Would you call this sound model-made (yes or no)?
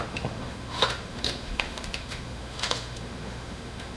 yes